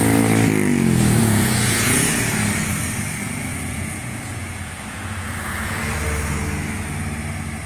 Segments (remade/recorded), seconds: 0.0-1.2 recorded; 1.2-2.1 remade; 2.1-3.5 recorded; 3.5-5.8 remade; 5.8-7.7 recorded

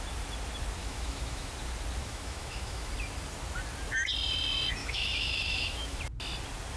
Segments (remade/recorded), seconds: 0.0-0.8 recorded; 0.8-1.5 remade; 1.5-2.0 recorded; 2.0-2.9 remade; 2.9-4.8 recorded; 4.8-6.0 remade; 6.0-6.8 recorded

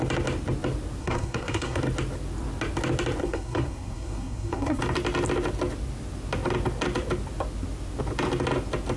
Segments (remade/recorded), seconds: 0.0-1.0 recorded; 1.0-1.8 remade; 1.8-3.2 recorded; 3.2-4.8 remade; 4.8-9.0 recorded

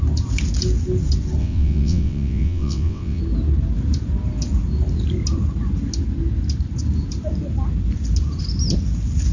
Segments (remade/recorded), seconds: 0.0-1.4 recorded; 1.4-3.2 remade; 3.2-9.3 recorded